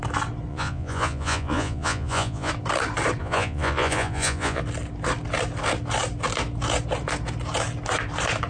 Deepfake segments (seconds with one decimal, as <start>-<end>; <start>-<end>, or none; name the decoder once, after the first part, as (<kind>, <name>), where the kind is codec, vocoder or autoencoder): 0.5-2.5 (vocoder, Vocos); 3.2-4.6